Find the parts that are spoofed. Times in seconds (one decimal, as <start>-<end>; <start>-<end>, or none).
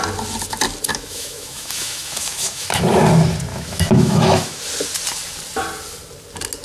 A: 0.9-2.8; 3.5-4.6